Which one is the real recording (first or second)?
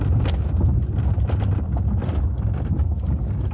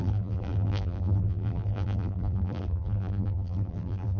first